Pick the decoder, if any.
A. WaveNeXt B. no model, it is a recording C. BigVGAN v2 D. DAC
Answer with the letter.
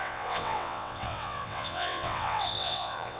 A